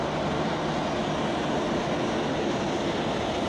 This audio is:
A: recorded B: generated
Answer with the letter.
A